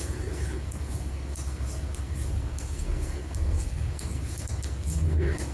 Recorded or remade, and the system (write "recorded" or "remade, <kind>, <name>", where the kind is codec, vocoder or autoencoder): remade, codec, SNAC